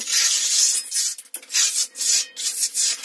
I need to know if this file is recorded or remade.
recorded